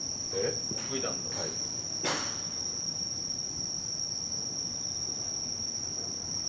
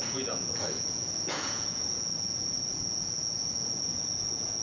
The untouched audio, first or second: first